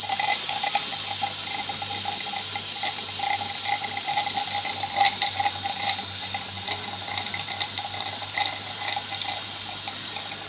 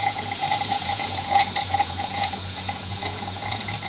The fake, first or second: second